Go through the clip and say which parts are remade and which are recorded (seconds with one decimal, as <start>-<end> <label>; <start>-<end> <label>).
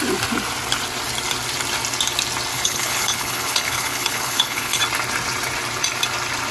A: 0.0-2.5 recorded; 2.5-4.8 remade; 4.8-6.5 recorded